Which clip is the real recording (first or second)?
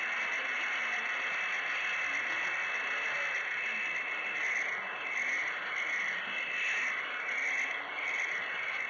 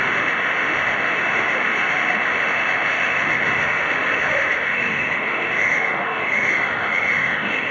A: first